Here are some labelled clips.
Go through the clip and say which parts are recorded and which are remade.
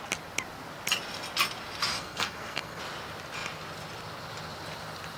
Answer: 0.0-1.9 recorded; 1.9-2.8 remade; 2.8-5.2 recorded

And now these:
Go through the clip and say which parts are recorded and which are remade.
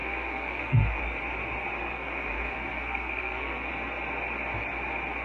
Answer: 0.0-1.0 remade; 1.0-1.8 recorded; 1.8-3.7 remade; 3.7-5.2 recorded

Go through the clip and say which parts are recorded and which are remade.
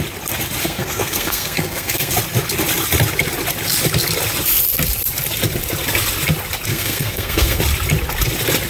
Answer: 0.0-0.6 recorded; 0.6-2.1 remade; 2.1-6.7 recorded; 6.7-7.6 remade; 7.6-8.7 recorded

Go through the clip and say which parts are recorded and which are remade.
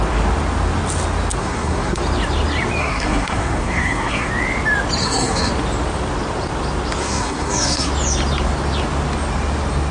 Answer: 0.0-1.4 recorded; 1.4-2.0 remade; 2.0-2.8 recorded; 2.8-4.3 remade; 4.3-5.0 recorded; 5.0-5.5 remade; 5.5-7.0 recorded; 7.0-7.9 remade; 7.9-9.9 recorded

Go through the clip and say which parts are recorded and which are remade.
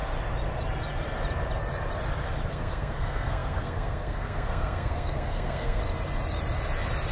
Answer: 0.0-2.5 recorded; 2.5-5.8 remade; 5.8-7.1 recorded